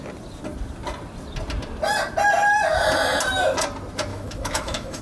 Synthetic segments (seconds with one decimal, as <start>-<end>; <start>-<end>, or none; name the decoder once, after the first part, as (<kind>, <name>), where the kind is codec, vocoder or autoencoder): 4.1-5.0 (autoencoder, DAC-VAE)